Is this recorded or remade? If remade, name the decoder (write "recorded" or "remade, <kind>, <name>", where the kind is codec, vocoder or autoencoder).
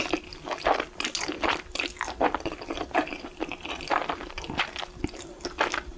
recorded